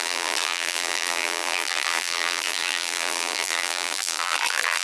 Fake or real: fake